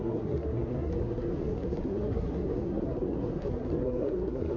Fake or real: fake